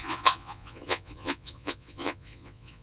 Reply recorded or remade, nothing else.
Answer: remade